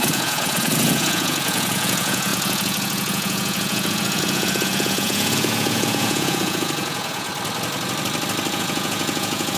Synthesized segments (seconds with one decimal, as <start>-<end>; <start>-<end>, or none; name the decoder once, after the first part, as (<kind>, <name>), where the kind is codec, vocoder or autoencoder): 0.0-7.3 (vocoder, Vocos); 8.5-9.6